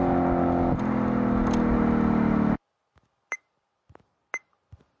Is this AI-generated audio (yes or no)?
no